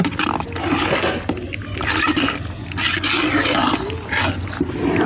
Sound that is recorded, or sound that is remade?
recorded